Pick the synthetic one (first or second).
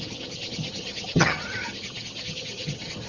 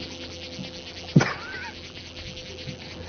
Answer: first